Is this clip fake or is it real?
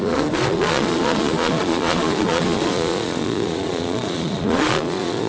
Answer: fake